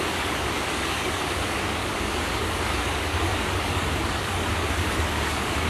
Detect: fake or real fake